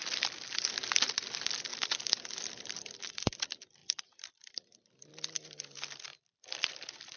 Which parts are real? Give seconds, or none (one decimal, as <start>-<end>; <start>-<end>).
0.7-1.7; 2.9-3.8; 5.1-6.1